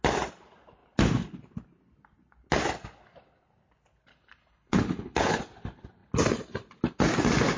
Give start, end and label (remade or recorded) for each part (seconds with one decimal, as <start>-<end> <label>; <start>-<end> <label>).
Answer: 0.0-4.1 recorded; 4.1-5.4 remade; 5.4-7.6 recorded